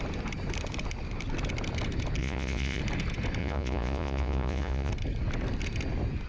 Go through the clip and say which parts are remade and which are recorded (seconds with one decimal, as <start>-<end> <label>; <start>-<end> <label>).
0.0-2.2 recorded; 2.2-2.8 remade; 2.8-3.4 recorded; 3.4-4.9 remade; 4.9-6.3 recorded

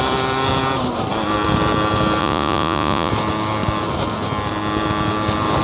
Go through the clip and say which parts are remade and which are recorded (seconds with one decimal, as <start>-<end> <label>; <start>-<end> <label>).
0.0-2.2 recorded; 2.2-3.1 remade; 3.1-5.6 recorded

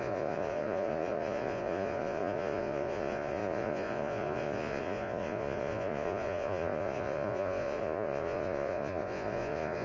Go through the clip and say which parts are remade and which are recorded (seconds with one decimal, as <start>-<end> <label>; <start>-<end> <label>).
0.0-9.8 remade

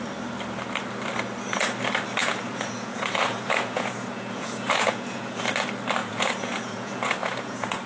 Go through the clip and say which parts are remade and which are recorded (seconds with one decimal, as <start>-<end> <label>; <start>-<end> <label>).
0.0-2.2 recorded; 2.2-5.4 remade; 5.4-6.0 recorded; 6.0-7.9 remade